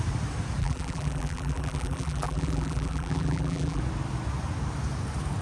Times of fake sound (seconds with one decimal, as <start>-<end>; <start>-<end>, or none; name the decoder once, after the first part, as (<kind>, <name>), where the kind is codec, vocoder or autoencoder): 0.6-3.8 (vocoder, BigVGAN v2)